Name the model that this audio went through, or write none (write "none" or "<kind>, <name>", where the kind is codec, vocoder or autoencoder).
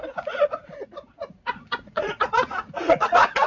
vocoder, Vocos